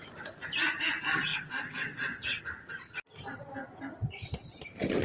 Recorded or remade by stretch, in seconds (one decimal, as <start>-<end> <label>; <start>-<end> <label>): 0.0-1.3 recorded; 1.3-2.4 remade; 2.4-5.0 recorded